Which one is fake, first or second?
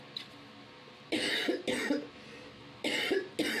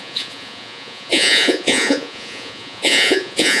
second